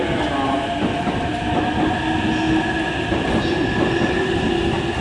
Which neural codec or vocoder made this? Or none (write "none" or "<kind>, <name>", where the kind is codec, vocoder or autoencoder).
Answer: none